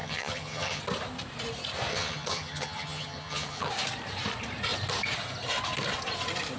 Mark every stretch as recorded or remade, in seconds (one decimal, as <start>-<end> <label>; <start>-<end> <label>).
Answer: 0.0-0.8 remade; 0.8-1.9 recorded; 1.9-3.7 remade; 3.7-6.6 recorded